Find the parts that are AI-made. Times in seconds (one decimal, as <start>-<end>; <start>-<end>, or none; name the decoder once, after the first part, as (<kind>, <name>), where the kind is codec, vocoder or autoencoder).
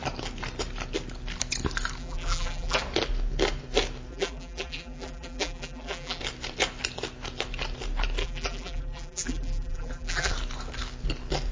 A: 2.0-2.8 (vocoder, BigVGAN v2); 4.1-6.2; 8.2-10.3